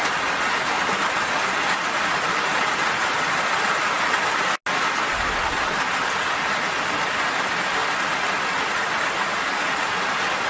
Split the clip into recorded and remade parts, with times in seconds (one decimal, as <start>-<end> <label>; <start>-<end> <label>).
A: 0.0-10.5 recorded

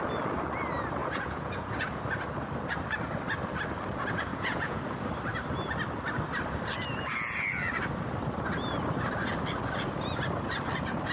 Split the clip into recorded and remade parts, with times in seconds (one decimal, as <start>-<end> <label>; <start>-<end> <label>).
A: 0.0-1.0 recorded; 1.0-2.0 remade; 2.0-4.3 recorded; 4.3-4.8 remade; 4.8-11.1 recorded

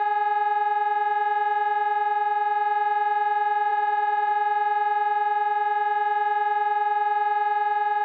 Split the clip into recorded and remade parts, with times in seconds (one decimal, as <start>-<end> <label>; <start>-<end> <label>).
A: 0.0-8.0 recorded